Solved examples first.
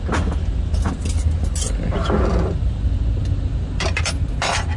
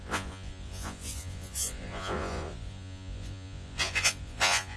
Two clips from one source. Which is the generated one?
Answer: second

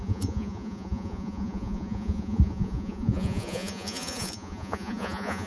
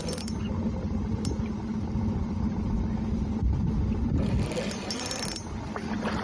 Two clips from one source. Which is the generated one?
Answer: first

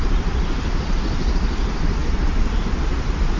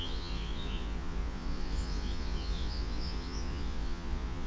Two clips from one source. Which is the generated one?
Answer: second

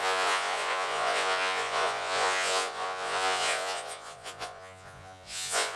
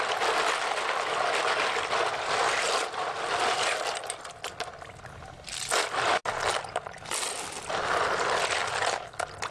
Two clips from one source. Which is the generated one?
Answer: first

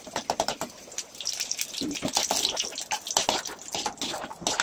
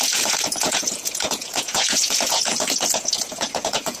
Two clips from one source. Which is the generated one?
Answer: second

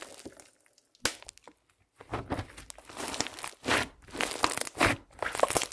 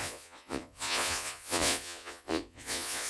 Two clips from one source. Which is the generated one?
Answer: second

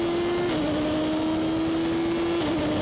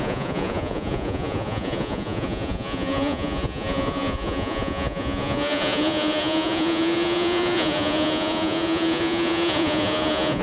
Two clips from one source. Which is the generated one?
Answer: second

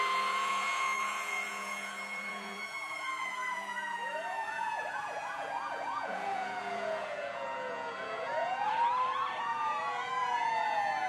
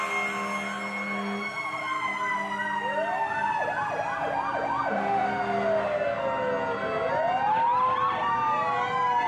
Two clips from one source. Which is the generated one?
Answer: first